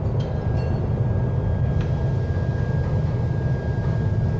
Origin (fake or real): real